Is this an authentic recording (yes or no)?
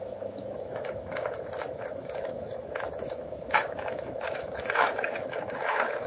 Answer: no